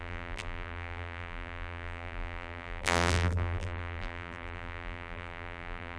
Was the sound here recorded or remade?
remade